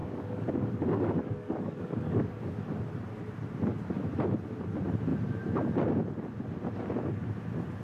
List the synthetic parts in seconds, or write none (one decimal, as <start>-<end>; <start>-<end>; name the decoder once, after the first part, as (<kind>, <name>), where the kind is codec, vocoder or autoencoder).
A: 0.0-2.6 (codec, DAC)